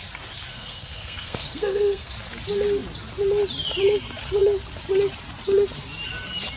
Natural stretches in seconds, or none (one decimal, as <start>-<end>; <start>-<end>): 0.0-0.5; 2.1-6.6